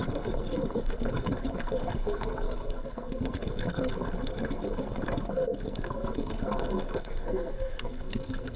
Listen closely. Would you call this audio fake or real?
fake